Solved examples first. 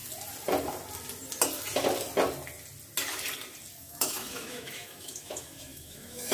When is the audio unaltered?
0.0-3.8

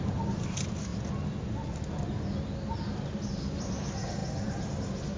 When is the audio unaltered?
0.0-5.2